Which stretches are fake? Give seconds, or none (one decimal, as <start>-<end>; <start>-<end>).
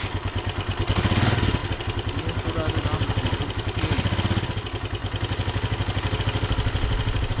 none